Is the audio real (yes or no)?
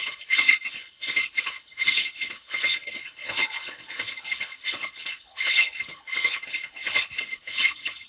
no